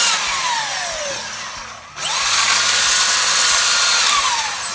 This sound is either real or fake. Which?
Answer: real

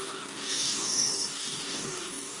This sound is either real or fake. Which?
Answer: fake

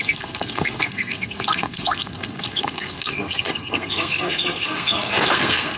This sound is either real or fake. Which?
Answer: fake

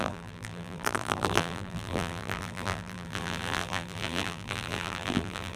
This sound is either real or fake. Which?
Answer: fake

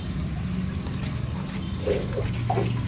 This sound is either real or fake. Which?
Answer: real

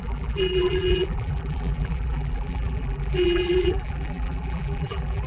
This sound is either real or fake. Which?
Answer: fake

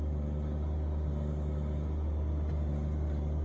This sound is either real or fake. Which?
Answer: real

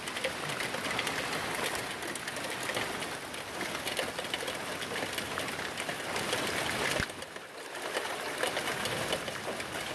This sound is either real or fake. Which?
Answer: real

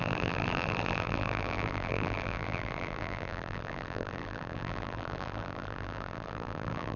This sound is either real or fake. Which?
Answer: fake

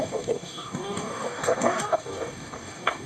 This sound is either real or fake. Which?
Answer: fake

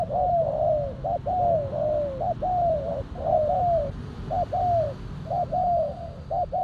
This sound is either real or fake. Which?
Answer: real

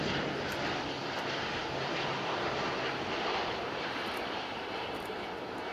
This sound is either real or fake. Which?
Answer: real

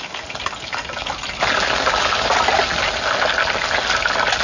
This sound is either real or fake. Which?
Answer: real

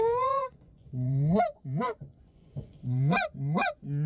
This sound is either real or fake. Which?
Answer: fake